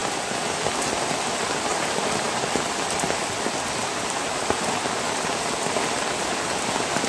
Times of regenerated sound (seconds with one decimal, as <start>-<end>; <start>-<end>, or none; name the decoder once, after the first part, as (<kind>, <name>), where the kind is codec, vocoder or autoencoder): 1.7-2.5 (vocoder, BigVGAN v2); 3.8-4.7

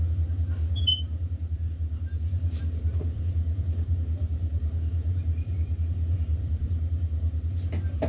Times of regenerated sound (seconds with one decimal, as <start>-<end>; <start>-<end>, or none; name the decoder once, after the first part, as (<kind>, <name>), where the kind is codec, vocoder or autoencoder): 0.0-8.1 (vocoder, BigVGAN v2)